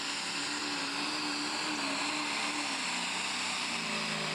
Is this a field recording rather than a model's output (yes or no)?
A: yes